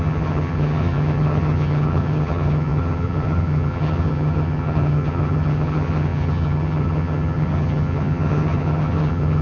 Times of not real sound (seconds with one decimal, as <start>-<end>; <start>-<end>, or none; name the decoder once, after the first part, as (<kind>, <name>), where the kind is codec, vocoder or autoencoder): 0.0-9.4 (vocoder, HiFi-GAN)